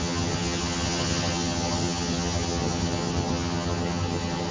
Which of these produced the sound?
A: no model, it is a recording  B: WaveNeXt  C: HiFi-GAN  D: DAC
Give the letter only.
C